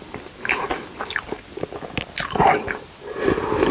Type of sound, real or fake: real